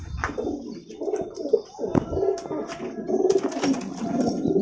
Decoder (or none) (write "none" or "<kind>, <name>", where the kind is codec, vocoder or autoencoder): none